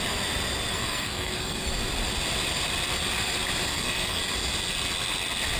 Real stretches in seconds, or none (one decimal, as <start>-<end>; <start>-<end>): 0.0-0.7; 1.7-3.7; 4.2-5.6